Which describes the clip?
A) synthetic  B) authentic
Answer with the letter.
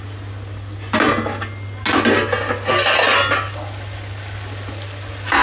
B